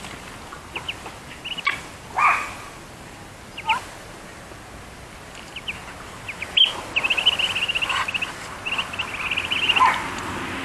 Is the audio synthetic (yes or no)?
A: no